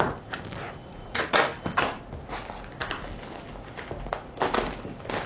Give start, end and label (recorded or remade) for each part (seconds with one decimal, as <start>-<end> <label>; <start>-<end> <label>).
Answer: 0.0-0.8 recorded; 0.8-1.4 remade; 1.4-5.3 recorded

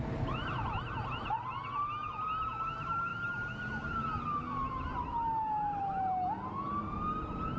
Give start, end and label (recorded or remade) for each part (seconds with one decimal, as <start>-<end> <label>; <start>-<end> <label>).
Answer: 0.0-7.6 recorded

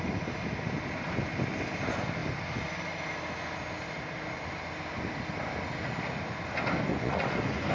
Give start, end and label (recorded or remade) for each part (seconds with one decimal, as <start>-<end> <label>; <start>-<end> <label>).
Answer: 0.0-6.9 recorded; 6.9-7.7 remade

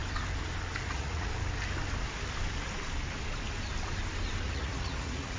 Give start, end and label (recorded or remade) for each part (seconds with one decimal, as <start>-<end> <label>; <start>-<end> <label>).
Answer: 0.0-0.9 recorded; 0.9-1.3 remade; 1.3-4.5 recorded; 4.5-5.4 remade

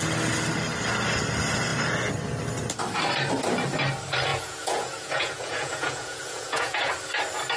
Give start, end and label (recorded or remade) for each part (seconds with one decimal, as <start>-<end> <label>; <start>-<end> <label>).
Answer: 0.0-4.3 recorded; 4.3-6.9 remade; 6.9-7.6 recorded

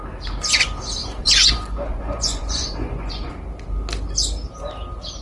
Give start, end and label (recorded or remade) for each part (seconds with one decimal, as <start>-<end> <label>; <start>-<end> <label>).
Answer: 0.0-1.0 recorded; 1.0-3.3 remade; 3.3-5.2 recorded

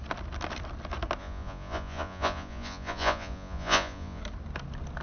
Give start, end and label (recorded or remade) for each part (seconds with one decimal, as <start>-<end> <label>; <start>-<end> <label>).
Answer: 0.0-1.2 recorded; 1.2-4.2 remade; 4.2-5.0 recorded